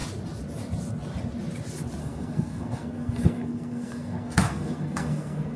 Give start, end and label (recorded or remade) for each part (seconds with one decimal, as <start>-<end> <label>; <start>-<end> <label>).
0.0-2.0 recorded; 2.0-5.6 remade